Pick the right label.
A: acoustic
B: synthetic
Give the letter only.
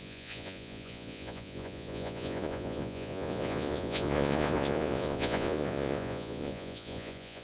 B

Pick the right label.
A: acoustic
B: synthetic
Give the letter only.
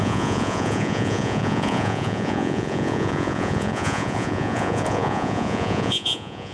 B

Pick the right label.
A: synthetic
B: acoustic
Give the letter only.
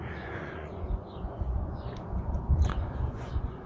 A